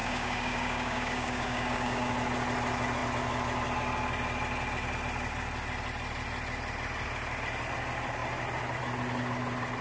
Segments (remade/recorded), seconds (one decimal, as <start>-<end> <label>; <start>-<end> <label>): 0.0-2.1 remade; 2.1-9.8 recorded